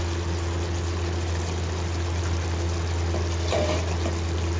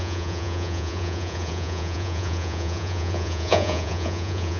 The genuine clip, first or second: first